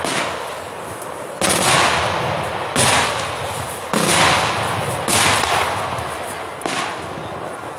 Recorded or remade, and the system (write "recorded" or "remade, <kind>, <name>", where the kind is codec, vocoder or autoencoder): recorded